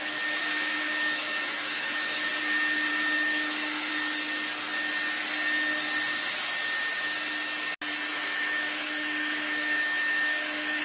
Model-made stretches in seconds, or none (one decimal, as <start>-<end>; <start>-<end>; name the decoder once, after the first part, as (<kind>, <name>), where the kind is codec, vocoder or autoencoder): 0.4-2.3 (autoencoder, DAC-VAE); 2.9-3.9; 8.1-10.8